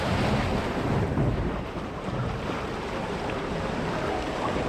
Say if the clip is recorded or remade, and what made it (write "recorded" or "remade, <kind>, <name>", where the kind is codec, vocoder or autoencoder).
remade, vocoder, BigVGAN v2